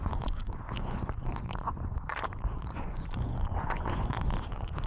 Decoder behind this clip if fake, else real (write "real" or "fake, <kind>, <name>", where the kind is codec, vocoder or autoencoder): fake, vocoder, Vocos